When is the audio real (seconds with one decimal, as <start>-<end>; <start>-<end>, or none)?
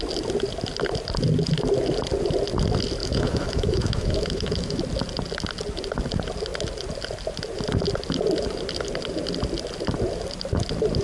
0.0-3.0; 4.8-11.0